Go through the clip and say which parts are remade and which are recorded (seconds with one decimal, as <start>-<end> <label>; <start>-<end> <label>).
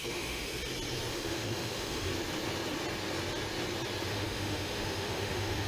0.0-0.5 remade; 0.5-1.1 recorded; 1.1-2.1 remade; 2.1-4.1 recorded; 4.1-5.7 remade